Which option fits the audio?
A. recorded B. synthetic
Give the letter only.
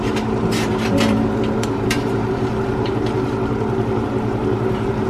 B